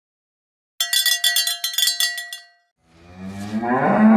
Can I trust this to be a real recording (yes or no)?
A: yes